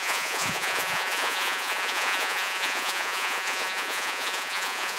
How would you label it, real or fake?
fake